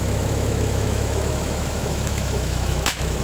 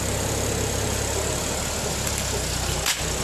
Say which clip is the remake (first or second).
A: first